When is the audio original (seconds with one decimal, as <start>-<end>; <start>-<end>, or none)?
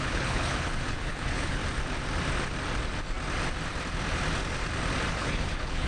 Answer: 1.6-5.1